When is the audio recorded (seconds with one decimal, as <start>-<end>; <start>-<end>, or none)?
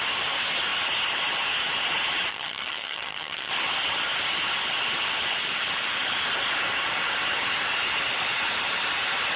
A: 0.0-2.3; 3.5-9.4